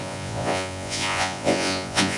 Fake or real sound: fake